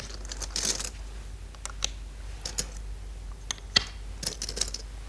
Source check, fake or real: real